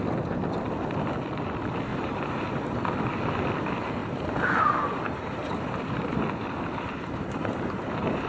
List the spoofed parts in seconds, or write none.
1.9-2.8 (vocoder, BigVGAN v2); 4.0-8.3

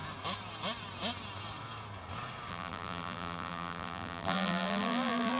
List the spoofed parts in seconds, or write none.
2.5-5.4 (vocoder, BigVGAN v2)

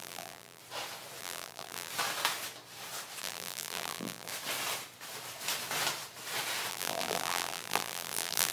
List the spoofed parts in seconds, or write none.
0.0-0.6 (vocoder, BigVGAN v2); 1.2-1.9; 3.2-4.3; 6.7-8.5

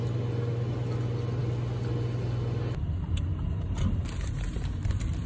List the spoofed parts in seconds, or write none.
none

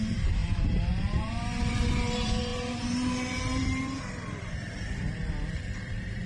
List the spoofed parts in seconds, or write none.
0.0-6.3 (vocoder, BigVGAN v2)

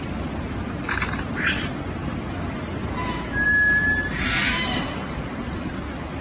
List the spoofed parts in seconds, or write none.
none